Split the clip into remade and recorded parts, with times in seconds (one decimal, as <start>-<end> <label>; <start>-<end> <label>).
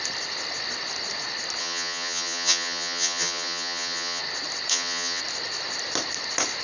0.0-1.6 recorded; 1.6-4.2 remade; 4.2-4.7 recorded; 4.7-5.2 remade; 5.2-6.6 recorded